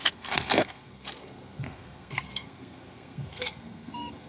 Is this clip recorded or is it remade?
remade